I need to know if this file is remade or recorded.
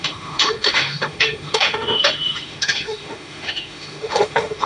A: remade